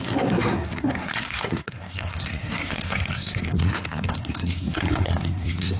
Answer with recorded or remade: remade